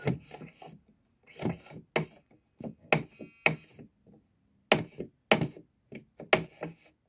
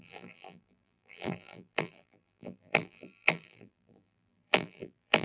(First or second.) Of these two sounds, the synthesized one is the second